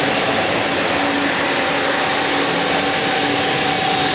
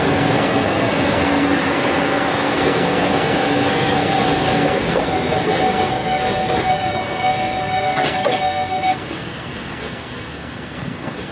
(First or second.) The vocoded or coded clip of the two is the second